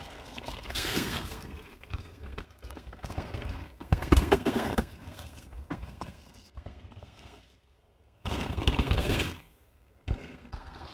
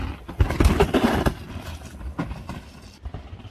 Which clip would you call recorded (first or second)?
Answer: second